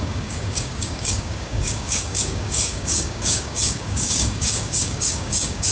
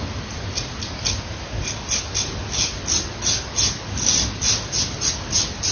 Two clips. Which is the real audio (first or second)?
second